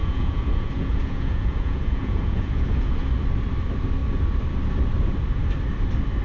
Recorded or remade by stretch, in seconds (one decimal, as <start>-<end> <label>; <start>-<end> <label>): 0.0-3.1 remade; 3.1-6.2 recorded